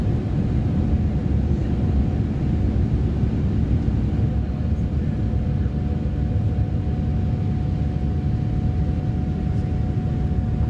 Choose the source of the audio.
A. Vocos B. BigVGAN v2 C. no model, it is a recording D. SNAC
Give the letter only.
C